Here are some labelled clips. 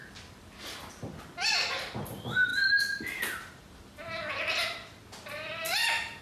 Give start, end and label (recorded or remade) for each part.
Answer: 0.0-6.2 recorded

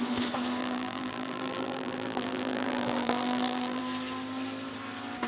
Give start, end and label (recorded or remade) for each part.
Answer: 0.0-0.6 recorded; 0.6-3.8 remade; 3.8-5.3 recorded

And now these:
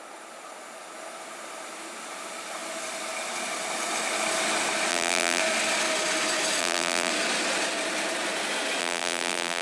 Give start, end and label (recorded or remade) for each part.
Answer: 0.0-4.9 recorded; 4.9-5.4 remade; 5.4-6.6 recorded; 6.6-7.1 remade; 7.1-8.8 recorded; 8.8-9.6 remade

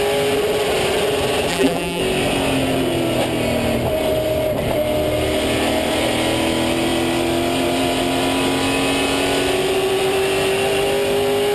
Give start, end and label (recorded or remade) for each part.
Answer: 0.0-1.5 recorded; 1.5-2.0 remade; 2.0-11.5 recorded